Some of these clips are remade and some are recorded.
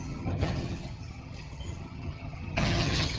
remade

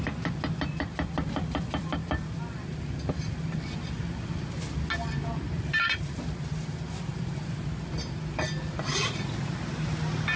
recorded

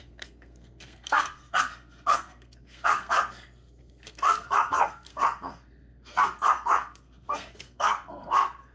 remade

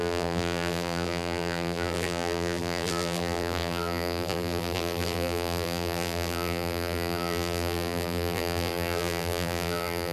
remade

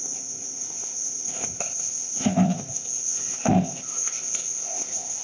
remade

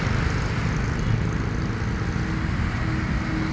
recorded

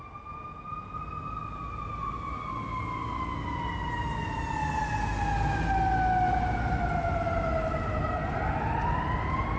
recorded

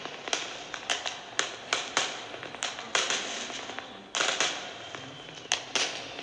recorded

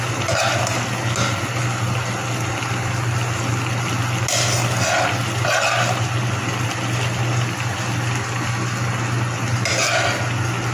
recorded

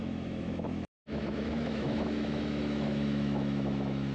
remade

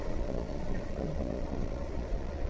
remade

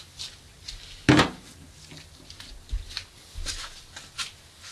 recorded